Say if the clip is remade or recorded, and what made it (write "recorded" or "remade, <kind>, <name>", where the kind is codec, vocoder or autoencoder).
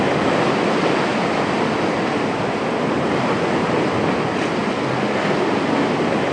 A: recorded